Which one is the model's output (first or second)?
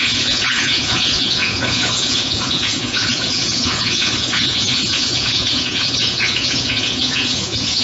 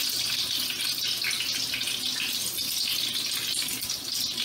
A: first